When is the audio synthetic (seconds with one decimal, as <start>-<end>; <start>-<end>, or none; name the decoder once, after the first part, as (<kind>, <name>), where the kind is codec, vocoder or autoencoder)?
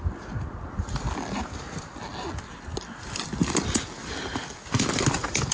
none